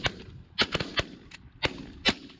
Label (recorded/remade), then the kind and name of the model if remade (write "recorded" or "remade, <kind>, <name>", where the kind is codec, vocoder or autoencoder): recorded